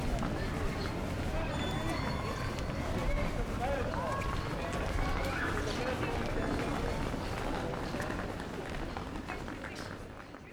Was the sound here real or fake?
real